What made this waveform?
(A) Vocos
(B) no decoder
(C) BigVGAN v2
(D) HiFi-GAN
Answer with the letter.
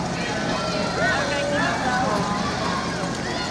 B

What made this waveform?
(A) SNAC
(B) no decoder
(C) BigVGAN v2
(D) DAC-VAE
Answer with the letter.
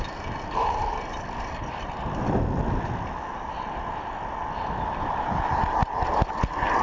B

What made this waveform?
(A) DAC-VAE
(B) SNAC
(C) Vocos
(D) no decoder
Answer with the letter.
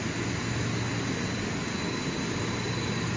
D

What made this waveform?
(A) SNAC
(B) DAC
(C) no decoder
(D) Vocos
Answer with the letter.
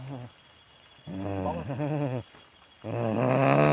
C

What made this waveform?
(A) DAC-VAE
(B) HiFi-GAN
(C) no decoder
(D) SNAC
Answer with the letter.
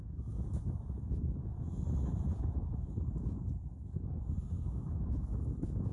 A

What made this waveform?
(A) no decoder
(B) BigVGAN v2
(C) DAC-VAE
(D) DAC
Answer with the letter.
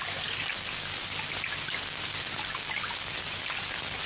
A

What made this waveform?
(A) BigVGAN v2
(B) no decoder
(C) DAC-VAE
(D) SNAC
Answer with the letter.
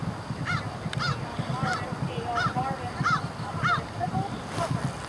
B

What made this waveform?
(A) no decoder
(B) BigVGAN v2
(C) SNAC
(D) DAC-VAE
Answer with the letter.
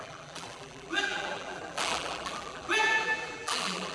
B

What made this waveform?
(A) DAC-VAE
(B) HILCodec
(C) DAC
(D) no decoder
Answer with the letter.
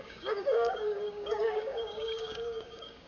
C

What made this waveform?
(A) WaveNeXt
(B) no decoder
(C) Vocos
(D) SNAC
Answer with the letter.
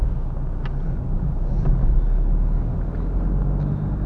B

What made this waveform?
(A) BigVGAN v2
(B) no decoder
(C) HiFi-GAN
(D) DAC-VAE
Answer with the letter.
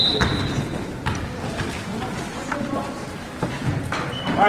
B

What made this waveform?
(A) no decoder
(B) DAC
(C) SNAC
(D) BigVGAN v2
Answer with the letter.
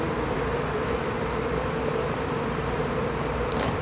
D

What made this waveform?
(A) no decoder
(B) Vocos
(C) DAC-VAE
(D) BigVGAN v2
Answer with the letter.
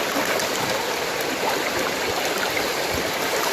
A